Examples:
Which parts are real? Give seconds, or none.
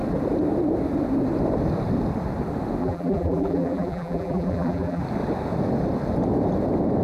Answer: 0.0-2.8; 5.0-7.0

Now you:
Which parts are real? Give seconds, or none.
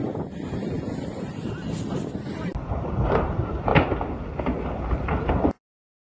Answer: 0.0-2.7; 3.7-5.3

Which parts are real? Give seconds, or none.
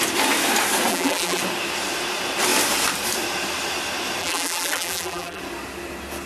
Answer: 0.0-0.9; 1.4-4.2; 5.4-6.3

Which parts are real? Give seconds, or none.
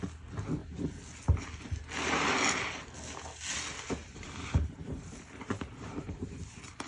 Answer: 0.0-4.0